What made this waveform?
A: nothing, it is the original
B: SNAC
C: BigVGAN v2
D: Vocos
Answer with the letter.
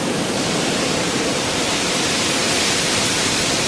C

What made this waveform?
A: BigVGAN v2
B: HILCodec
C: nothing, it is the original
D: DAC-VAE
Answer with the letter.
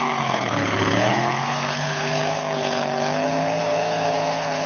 B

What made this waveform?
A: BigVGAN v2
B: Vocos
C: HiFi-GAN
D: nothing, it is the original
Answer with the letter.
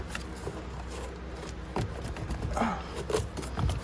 D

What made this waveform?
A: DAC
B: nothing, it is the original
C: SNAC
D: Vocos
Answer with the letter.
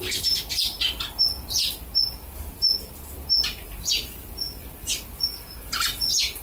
B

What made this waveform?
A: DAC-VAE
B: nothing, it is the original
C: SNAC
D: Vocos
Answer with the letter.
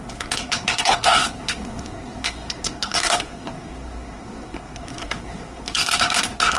C